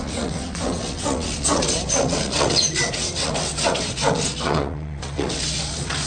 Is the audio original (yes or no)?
no